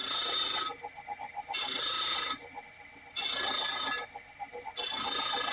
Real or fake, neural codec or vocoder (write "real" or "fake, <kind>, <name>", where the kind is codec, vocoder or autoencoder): real